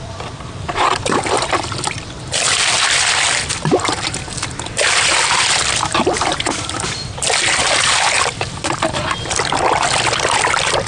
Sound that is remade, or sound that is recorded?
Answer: remade